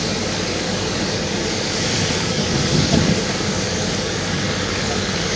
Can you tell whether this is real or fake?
fake